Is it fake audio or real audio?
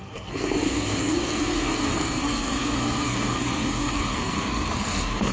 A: fake